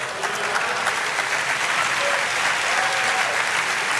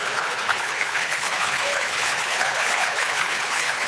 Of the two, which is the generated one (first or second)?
second